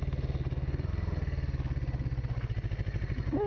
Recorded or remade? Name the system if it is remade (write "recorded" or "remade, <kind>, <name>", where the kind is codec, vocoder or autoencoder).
recorded